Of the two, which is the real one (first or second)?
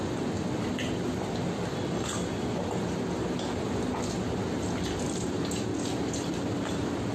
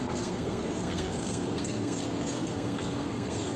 first